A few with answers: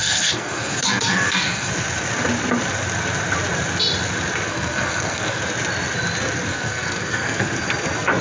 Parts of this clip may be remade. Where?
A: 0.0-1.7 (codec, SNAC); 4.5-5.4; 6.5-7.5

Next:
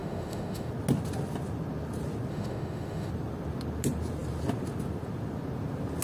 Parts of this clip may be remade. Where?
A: 0.0-0.7 (autoencoder, DAC-VAE); 2.3-3.1

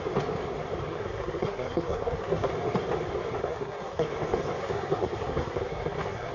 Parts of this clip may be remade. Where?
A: 0.9-2.5 (codec, SNAC); 3.4-4.1; 4.6-6.3

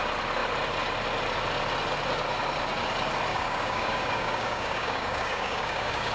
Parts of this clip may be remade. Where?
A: 3.3-6.1 (codec, DAC)

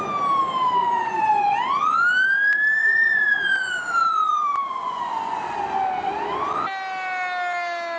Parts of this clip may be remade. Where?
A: 0.8-1.5 (vocoder, Vocos); 2.8-5.6

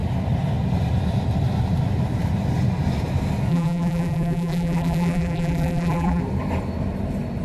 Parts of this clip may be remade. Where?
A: 3.5-6.2 (vocoder, BigVGAN v2)

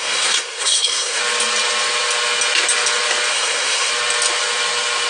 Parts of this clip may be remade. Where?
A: 0.0-1.2 (codec, SNAC); 3.3-3.9